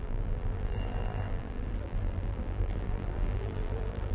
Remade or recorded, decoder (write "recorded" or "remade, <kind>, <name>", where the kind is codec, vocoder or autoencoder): remade, vocoder, BigVGAN v2